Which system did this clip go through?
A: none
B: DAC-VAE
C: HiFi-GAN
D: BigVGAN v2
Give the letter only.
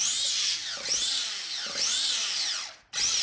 A